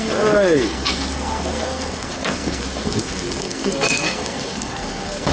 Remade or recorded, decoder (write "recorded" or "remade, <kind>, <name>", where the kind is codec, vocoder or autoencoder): remade, codec, SNAC